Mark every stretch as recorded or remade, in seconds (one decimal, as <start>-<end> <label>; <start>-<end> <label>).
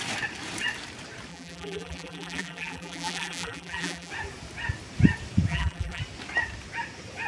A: 0.0-1.3 recorded; 1.3-4.1 remade; 4.1-5.5 recorded; 5.5-6.0 remade; 6.0-7.3 recorded